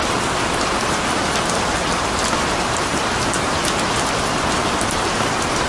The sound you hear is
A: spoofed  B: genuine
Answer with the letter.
A